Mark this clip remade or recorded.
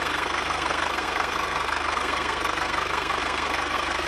remade